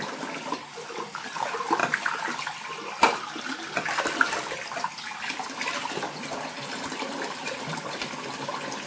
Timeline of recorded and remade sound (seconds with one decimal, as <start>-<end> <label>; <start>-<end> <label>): 0.0-8.9 recorded